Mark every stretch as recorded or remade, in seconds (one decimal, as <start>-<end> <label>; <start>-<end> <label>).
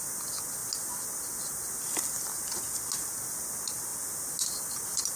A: 0.0-5.2 recorded